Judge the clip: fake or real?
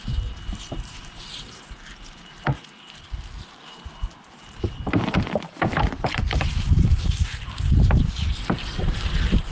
fake